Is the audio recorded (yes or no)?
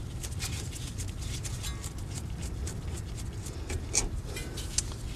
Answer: yes